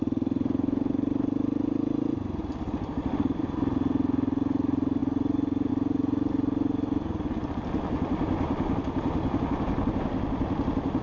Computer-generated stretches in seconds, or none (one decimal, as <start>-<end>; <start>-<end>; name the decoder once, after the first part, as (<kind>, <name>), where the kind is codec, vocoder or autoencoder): 2.4-3.4 (vocoder, BigVGAN v2); 5.0-5.7